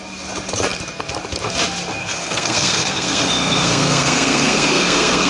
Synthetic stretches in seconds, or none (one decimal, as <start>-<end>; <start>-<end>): 2.0-5.3